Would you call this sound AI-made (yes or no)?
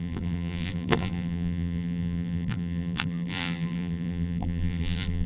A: yes